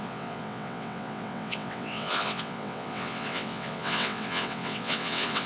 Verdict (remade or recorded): remade